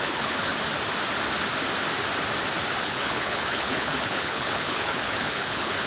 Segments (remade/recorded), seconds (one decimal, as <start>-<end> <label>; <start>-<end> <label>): 0.0-0.5 remade; 0.5-2.8 recorded; 2.8-5.9 remade